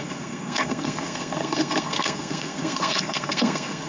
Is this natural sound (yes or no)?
no